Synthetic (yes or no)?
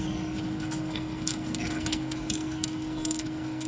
yes